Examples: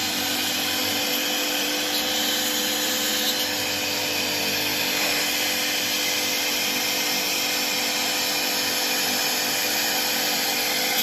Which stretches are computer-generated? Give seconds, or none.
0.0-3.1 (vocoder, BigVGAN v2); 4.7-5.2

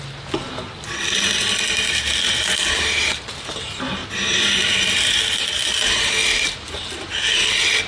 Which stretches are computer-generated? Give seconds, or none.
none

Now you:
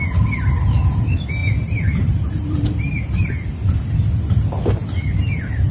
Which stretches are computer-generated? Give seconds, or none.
1.4-3.3 (vocoder, BigVGAN v2)